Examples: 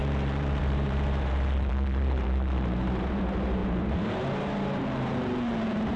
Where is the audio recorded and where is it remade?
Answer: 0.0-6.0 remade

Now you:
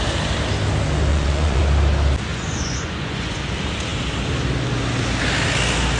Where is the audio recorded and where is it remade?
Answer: 0.0-1.1 recorded; 1.1-1.6 remade; 1.6-2.3 recorded; 2.3-3.4 remade; 3.4-6.0 recorded

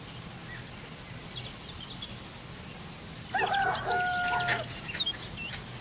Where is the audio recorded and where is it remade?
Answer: 0.0-5.8 recorded

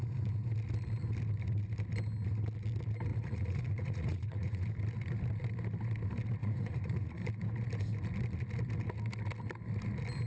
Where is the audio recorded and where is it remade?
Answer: 0.0-3.1 recorded; 3.1-4.6 remade; 4.6-6.4 recorded; 6.4-7.2 remade; 7.2-10.3 recorded

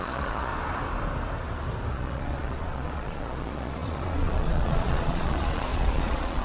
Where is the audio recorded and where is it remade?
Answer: 0.0-0.5 remade; 0.5-1.9 recorded; 1.9-6.4 remade

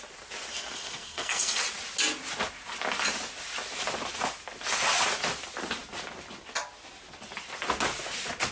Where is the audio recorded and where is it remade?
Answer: 0.0-0.5 recorded; 0.5-1.6 remade; 1.6-8.5 recorded